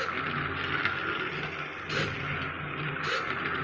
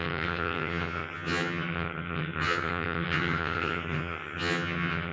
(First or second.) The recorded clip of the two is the first